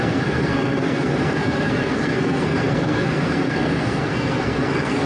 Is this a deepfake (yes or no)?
yes